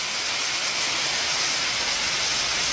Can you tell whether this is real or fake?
real